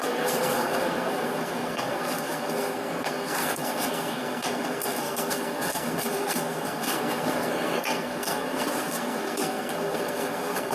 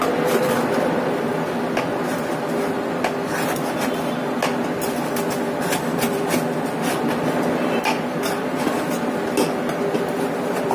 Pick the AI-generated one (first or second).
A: first